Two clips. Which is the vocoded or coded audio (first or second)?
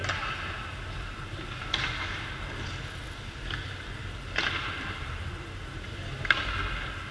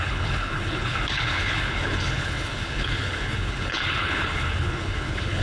second